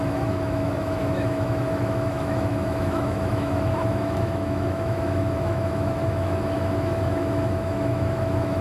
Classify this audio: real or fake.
fake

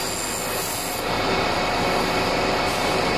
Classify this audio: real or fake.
real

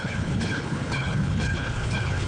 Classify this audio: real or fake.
fake